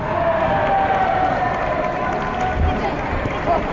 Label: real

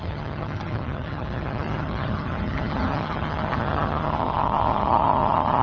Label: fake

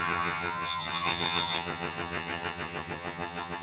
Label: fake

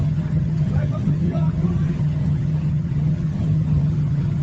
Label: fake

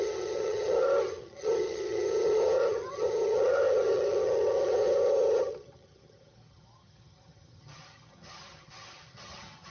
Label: fake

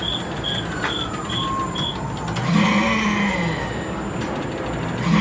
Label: real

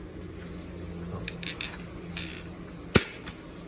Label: real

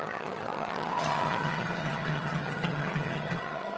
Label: fake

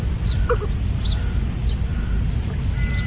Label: real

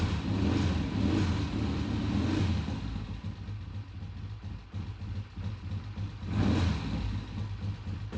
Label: real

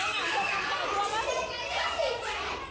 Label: real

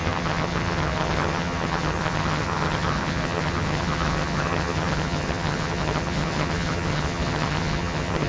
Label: fake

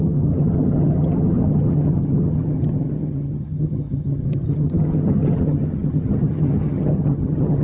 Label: fake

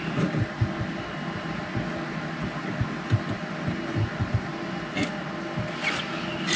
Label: real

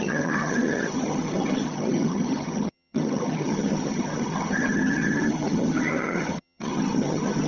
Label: fake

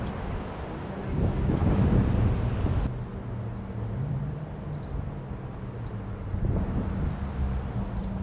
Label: real